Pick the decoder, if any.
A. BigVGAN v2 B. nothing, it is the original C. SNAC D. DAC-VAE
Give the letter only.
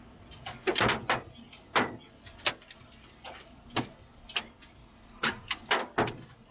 B